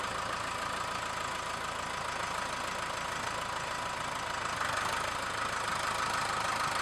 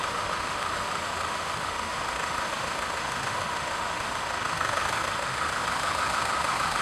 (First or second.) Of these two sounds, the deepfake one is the second